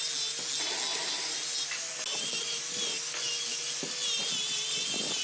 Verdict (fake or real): real